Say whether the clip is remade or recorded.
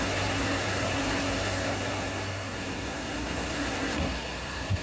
remade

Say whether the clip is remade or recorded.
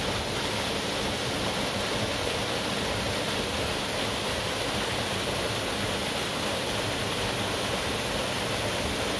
recorded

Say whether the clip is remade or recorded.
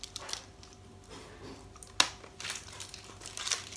recorded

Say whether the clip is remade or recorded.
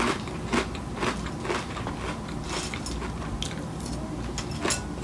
recorded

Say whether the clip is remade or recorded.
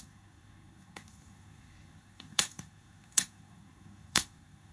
remade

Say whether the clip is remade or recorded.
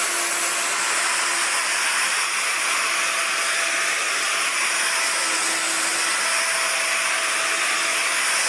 recorded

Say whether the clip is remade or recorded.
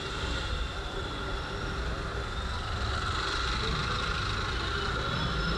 recorded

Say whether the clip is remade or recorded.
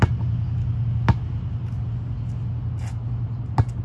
recorded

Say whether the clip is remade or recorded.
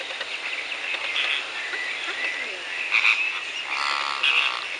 recorded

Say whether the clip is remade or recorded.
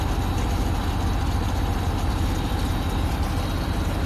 recorded